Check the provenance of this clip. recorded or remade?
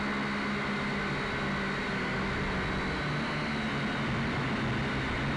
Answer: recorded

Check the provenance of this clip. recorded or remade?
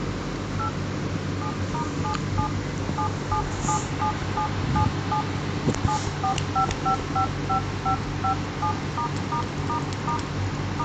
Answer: recorded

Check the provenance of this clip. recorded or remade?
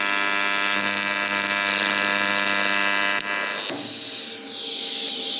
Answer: recorded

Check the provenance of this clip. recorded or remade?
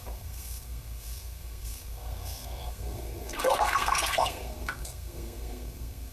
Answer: remade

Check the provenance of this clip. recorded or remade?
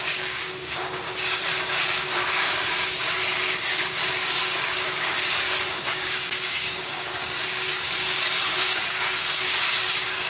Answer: remade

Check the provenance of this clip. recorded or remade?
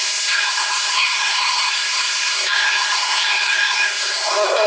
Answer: remade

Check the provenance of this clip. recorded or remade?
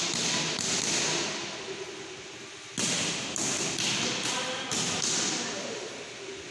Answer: recorded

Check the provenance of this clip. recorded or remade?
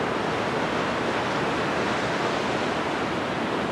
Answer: recorded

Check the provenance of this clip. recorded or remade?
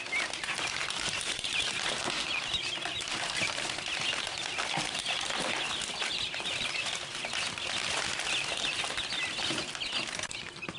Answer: recorded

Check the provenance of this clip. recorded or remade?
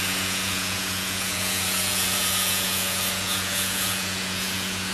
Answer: remade